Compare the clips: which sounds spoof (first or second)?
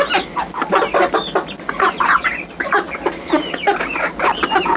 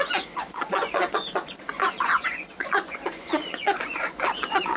second